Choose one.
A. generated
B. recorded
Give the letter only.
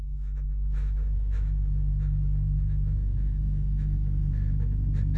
A